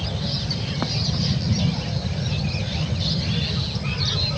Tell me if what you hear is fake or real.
real